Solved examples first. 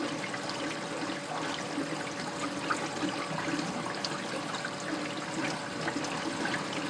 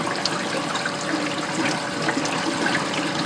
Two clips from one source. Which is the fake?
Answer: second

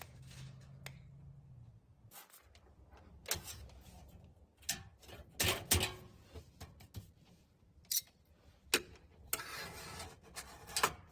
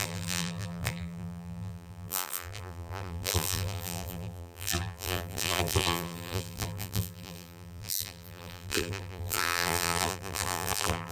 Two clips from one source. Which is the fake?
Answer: second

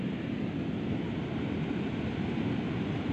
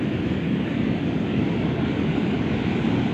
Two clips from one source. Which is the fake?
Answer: second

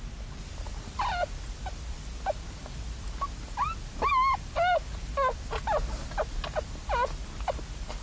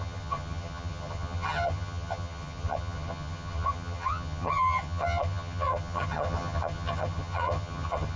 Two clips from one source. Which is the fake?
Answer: second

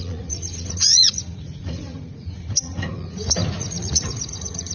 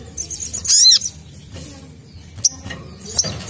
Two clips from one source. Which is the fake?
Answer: first